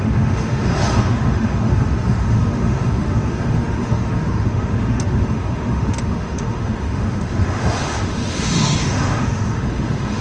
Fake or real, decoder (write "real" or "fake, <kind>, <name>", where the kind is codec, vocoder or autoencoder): fake, autoencoder, DAC-VAE